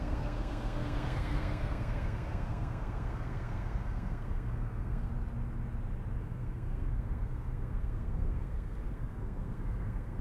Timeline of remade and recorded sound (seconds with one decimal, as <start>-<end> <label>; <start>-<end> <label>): 0.0-5.1 remade; 5.1-6.2 recorded; 6.2-10.2 remade